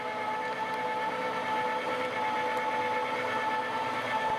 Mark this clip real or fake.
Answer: real